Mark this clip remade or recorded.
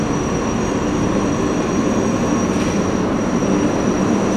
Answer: recorded